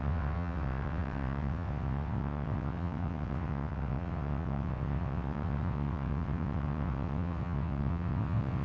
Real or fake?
fake